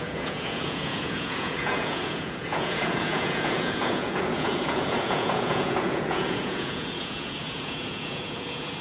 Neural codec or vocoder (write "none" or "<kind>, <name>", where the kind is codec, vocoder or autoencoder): vocoder, Vocos